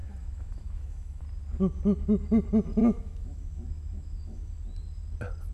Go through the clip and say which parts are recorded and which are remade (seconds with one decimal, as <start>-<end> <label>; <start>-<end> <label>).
0.0-1.2 remade; 1.2-2.8 recorded; 2.8-4.5 remade; 4.5-5.5 recorded